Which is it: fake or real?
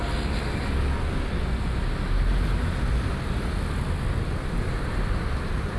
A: real